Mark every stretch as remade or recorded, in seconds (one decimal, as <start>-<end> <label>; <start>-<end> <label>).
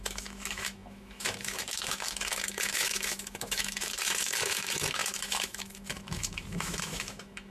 0.0-7.5 remade